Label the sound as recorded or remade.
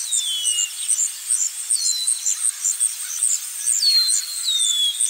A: recorded